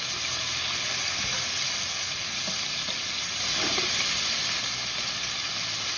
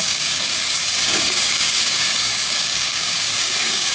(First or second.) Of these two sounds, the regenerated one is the second